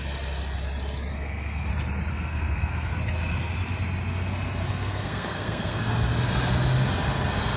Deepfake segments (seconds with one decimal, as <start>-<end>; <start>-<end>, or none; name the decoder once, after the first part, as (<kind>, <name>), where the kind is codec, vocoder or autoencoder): 1.1-1.7 (codec, SNAC); 2.1-2.9; 4.6-5.9